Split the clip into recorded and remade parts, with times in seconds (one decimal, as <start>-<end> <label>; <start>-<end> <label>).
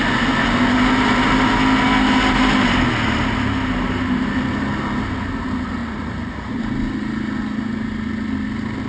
0.0-5.8 recorded; 5.8-6.6 remade; 6.6-8.9 recorded